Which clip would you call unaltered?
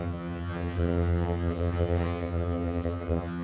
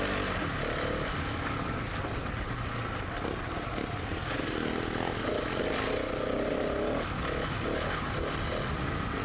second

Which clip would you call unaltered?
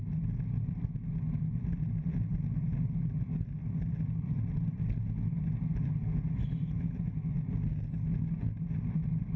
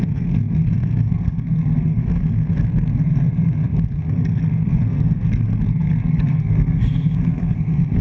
first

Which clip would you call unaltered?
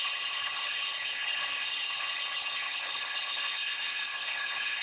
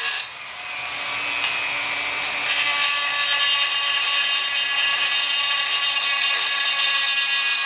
second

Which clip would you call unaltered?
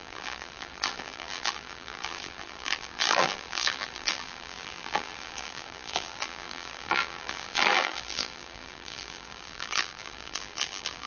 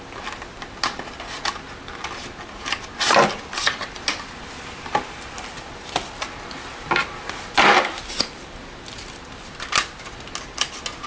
second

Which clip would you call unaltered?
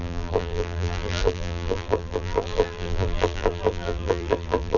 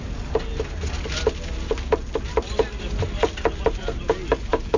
second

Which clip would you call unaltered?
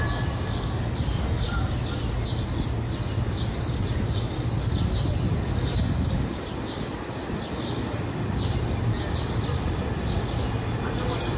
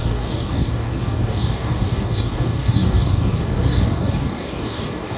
first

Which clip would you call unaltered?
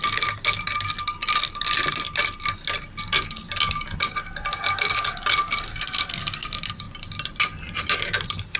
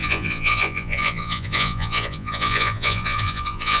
first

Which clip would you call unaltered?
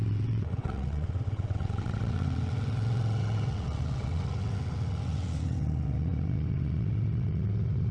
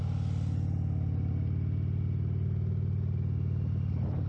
second